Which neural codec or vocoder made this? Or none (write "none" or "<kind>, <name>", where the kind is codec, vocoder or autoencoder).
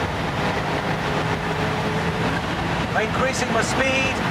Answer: vocoder, BigVGAN v2